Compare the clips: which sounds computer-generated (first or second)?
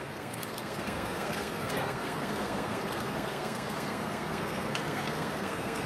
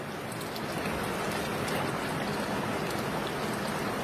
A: first